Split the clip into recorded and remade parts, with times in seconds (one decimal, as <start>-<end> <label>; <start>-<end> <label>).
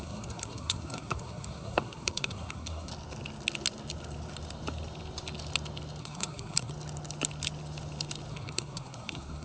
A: 0.0-2.9 remade; 2.9-6.0 recorded; 6.0-6.7 remade; 6.7-8.3 recorded; 8.3-9.4 remade